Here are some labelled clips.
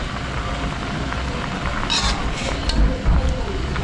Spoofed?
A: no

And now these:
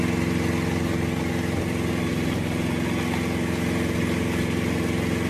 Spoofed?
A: no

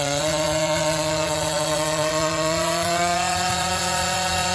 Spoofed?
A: yes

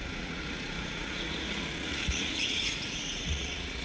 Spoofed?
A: yes